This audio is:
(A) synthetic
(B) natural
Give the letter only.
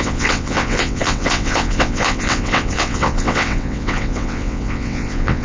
A